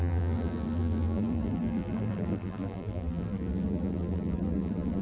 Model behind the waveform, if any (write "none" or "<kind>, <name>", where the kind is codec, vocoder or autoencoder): vocoder, BigVGAN v2